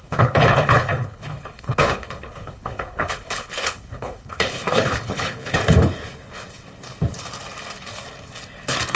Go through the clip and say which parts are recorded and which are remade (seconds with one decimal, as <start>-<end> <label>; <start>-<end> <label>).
0.0-5.6 remade; 5.6-9.0 recorded